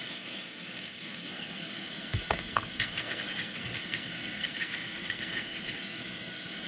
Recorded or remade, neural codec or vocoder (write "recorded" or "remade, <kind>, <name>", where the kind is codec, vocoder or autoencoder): remade, codec, SNAC